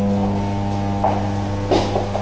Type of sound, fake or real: real